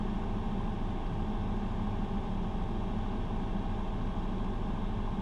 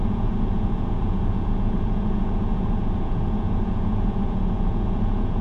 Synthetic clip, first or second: second